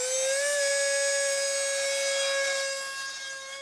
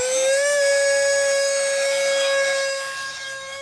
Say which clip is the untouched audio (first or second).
first